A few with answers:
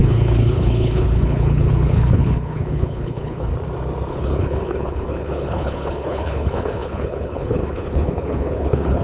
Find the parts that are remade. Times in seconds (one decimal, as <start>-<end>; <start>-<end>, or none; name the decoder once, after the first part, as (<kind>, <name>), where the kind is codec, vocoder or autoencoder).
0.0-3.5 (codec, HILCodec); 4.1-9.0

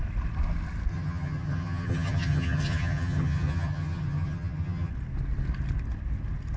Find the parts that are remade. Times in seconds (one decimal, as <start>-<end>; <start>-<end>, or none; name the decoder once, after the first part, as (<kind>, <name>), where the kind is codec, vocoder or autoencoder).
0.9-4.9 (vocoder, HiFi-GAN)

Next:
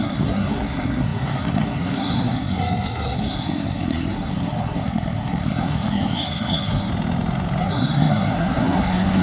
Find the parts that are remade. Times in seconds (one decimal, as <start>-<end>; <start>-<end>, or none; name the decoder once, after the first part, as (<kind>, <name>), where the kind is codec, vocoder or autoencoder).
0.0-6.9 (codec, SNAC); 7.6-9.2

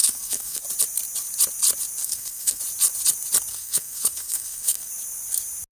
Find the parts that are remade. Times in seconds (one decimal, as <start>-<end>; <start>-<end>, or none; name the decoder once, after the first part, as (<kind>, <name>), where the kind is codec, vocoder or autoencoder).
0.0-0.6 (codec, SNAC); 2.0-2.6; 3.5-4.9

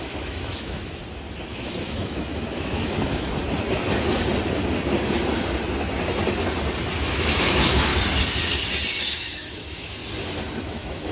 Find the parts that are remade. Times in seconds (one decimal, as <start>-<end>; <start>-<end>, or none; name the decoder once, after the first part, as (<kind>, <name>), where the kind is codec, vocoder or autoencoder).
0.0-1.0 (autoencoder, DAC-VAE); 1.5-3.3; 7.0-7.9; 9.0-10.0; 10.6-11.1

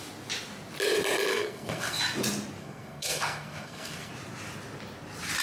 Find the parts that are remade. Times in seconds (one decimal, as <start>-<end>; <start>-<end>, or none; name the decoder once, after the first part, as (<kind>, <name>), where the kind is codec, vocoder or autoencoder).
1.3-2.0 (codec, SNAC); 2.6-4.1

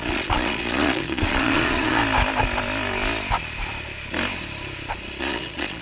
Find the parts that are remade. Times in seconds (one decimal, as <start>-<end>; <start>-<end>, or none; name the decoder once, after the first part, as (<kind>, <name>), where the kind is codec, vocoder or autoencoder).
0.0-2.0 (vocoder, Vocos); 5.2-5.8